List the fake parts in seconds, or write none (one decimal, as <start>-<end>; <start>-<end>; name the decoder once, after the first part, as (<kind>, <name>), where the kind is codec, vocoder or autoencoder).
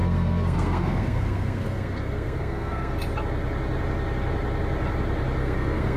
0.0-2.9 (codec, SNAC); 5.4-6.0